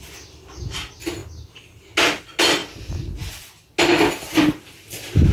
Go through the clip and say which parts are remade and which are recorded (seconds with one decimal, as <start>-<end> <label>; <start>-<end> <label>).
0.0-5.3 recorded